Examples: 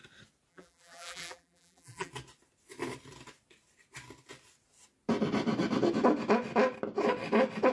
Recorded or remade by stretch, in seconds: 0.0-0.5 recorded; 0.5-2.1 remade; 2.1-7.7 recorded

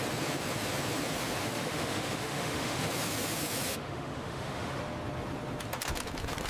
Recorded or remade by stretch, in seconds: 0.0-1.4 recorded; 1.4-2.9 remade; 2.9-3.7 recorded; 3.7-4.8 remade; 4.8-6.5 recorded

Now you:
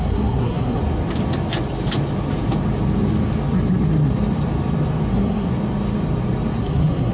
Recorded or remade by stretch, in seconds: 0.0-0.8 remade; 0.8-5.1 recorded; 5.1-5.5 remade; 5.5-6.6 recorded; 6.6-7.1 remade

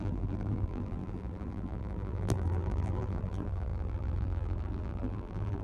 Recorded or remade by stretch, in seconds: 0.0-5.6 remade

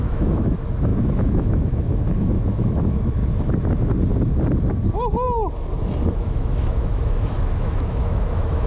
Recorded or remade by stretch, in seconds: 0.0-3.2 remade; 3.2-6.1 recorded; 6.1-8.7 remade

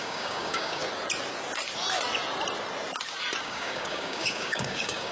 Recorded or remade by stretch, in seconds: 0.0-0.8 remade; 0.8-3.4 recorded; 3.4-5.1 remade